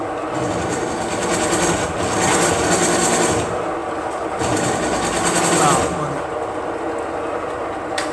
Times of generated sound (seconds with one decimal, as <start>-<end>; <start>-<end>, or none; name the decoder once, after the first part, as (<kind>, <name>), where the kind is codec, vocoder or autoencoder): none